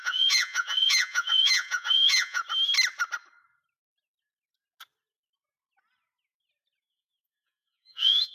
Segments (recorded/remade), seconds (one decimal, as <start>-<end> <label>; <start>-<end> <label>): 0.0-2.4 remade; 2.4-6.8 recorded; 6.8-8.3 remade